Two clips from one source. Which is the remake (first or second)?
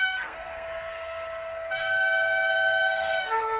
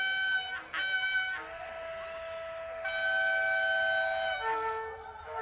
first